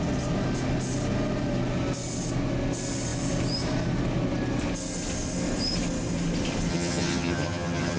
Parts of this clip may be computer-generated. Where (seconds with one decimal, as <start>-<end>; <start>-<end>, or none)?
6.7-8.0